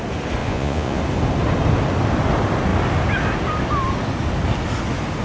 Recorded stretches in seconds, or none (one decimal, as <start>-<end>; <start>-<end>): 0.0-0.4; 1.0-5.2